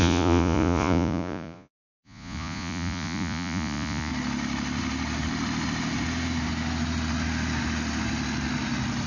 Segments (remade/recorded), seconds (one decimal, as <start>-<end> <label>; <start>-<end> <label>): 0.0-4.1 remade; 4.1-9.1 recorded